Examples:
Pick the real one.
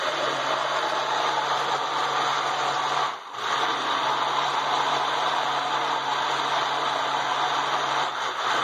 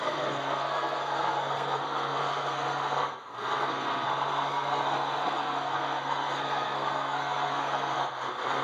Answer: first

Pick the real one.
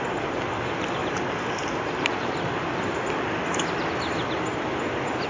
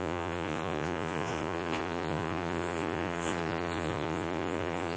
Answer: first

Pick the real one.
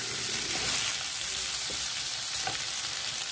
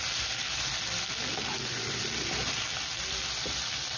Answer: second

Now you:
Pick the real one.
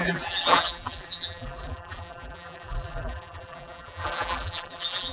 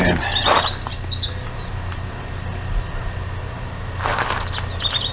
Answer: second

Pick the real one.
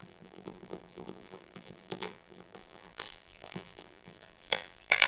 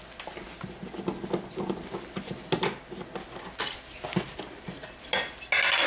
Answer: second